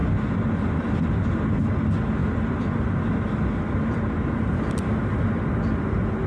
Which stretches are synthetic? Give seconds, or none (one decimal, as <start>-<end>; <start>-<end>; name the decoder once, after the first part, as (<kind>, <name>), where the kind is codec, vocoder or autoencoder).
none